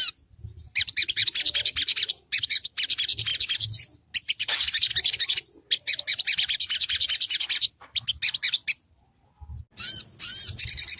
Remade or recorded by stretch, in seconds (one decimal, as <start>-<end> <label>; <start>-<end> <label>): 0.0-11.0 recorded